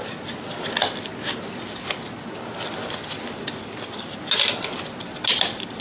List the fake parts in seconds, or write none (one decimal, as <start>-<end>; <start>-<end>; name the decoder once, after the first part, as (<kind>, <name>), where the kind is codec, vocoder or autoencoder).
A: none